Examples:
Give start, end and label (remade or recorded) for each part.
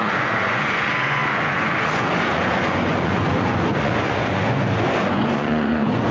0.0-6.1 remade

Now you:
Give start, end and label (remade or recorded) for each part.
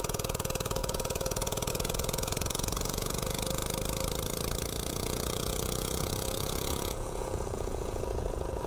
0.0-3.6 remade; 3.6-4.9 recorded; 4.9-8.7 remade